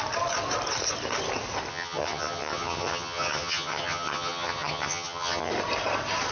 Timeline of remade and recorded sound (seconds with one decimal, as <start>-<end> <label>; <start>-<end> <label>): 0.0-1.7 recorded; 1.7-5.5 remade; 5.5-6.3 recorded